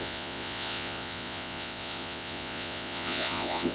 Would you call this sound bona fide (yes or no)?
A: no